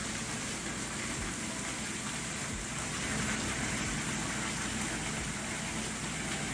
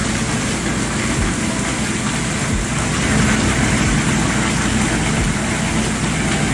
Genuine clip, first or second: second